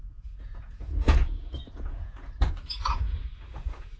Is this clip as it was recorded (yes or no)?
no